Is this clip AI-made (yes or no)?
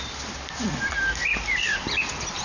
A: no